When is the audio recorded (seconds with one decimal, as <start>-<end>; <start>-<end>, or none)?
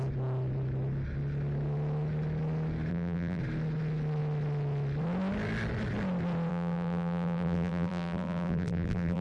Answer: 0.0-2.9; 3.4-6.5